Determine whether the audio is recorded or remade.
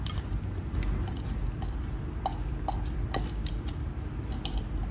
recorded